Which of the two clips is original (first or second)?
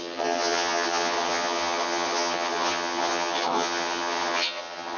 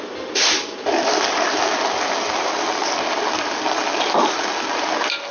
second